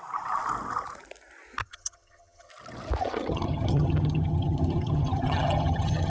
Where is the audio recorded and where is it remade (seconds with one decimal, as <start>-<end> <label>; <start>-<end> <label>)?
0.0-1.6 recorded; 1.6-2.5 remade; 2.5-3.0 recorded; 3.0-6.1 remade